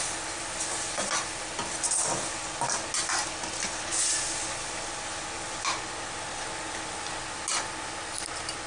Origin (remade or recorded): recorded